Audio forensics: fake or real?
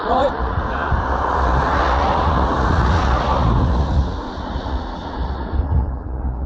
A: fake